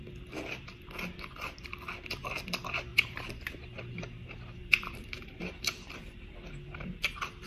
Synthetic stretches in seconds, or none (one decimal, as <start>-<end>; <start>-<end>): 2.9-7.5